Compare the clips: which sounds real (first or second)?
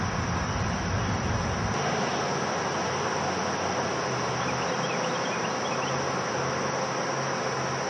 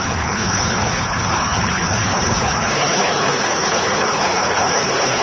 first